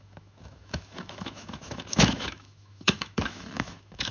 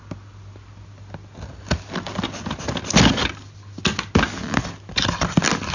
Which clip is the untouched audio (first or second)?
second